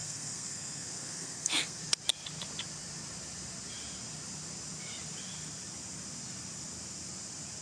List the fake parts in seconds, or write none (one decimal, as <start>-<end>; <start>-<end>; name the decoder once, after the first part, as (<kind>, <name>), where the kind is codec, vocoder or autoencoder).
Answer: 0.0-1.8 (codec, SNAC)